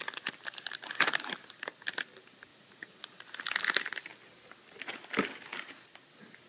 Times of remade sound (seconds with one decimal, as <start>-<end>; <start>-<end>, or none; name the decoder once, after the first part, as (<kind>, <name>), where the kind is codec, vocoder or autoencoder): 2.5-3.2 (vocoder, Vocos)